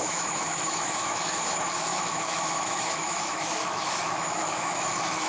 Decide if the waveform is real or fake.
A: fake